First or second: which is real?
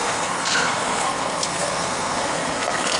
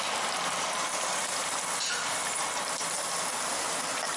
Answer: second